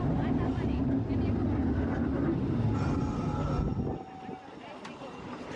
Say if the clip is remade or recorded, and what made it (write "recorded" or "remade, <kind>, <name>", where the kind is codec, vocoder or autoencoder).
recorded